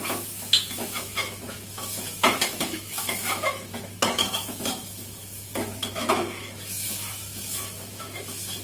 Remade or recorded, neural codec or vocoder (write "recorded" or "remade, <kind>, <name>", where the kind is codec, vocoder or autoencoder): remade, autoencoder, DAC-VAE